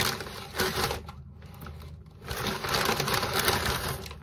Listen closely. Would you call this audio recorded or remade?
recorded